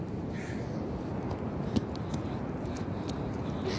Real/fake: real